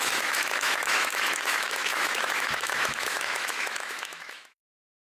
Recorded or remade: remade